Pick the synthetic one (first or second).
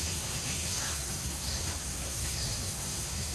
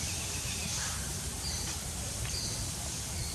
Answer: first